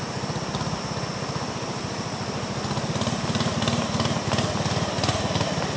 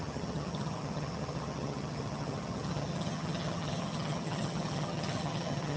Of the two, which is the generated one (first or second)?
second